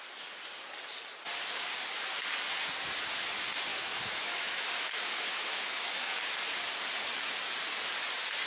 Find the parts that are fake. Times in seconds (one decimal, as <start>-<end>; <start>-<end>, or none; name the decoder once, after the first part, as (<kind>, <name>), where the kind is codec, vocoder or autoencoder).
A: 3.7-6.2 (autoencoder, DAC-VAE)